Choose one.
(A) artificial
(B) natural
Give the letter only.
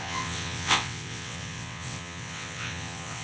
A